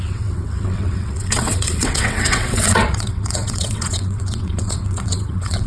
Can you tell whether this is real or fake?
fake